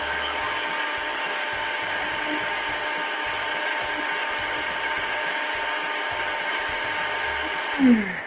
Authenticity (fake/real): real